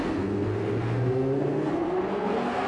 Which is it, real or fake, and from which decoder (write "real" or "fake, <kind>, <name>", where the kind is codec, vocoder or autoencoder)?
fake, codec, SNAC